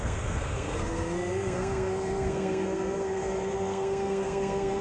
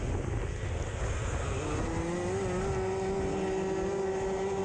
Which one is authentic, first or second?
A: second